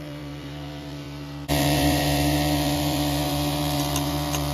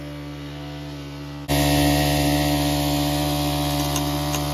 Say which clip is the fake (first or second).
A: first